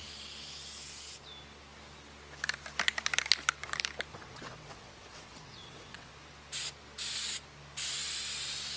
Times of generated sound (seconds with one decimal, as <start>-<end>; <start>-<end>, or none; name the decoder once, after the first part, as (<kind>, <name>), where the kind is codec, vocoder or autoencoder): 4.1-6.1 (vocoder, WaveNeXt)